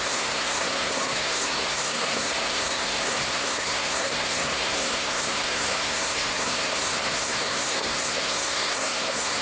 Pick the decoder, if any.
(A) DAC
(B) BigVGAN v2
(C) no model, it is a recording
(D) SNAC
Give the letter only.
D